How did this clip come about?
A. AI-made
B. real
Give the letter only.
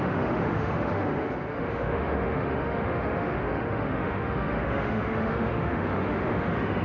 A